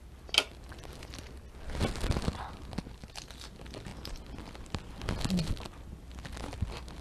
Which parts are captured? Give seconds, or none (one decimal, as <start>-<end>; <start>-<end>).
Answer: 0.0-7.0